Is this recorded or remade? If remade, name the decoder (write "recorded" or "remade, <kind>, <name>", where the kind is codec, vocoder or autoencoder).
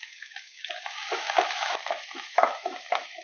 remade, autoencoder, DAC-VAE